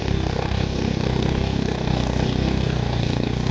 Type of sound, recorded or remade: remade